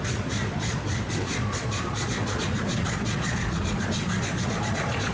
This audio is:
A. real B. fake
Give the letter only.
B